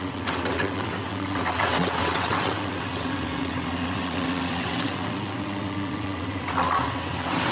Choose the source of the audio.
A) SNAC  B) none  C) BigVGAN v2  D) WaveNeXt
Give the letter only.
D